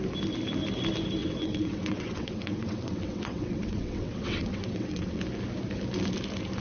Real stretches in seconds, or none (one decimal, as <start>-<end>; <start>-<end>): 0.0-1.2; 5.2-6.6